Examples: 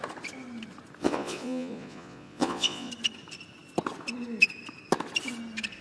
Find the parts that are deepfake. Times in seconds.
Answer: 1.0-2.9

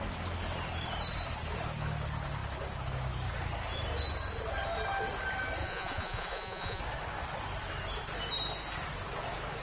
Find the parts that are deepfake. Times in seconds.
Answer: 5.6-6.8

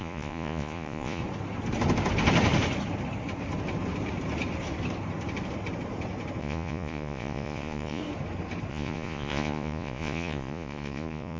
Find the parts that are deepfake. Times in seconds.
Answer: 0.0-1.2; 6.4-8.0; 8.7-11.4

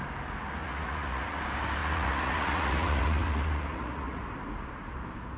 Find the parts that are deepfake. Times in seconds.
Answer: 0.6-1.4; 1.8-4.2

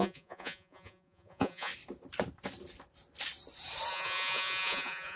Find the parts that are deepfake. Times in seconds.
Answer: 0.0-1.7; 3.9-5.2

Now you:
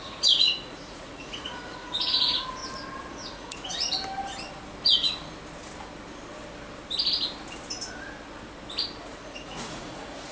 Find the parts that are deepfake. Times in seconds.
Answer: 0.0-2.6; 3.1-3.9; 9.0-10.3